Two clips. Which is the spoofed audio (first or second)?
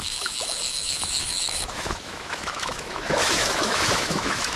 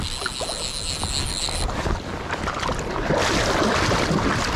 first